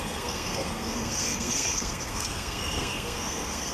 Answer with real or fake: fake